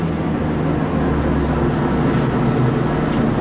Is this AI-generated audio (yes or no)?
no